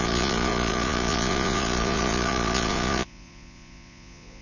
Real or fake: fake